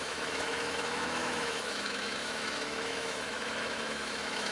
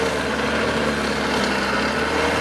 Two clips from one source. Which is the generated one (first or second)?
first